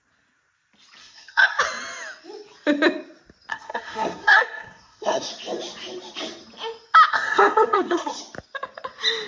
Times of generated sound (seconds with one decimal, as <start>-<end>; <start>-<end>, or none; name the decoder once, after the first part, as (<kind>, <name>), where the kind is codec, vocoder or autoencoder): 1.0-1.6 (codec, SNAC); 3.5-5.3; 7.1-8.2